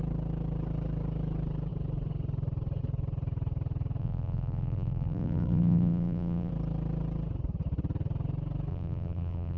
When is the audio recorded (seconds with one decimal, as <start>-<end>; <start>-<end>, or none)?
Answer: 0.0-4.0; 6.5-8.7